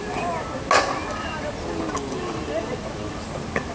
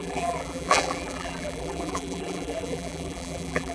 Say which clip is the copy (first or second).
second